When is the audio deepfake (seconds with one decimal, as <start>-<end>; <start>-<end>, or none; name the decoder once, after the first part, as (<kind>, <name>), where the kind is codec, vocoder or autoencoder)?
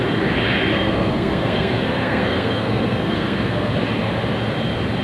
0.7-3.7 (codec, SNAC)